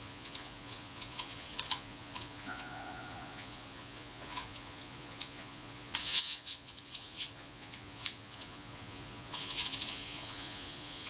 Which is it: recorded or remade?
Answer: remade